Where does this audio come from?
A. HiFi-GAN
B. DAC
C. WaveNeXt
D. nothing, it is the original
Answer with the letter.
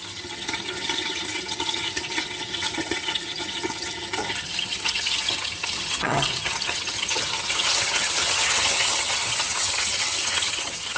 A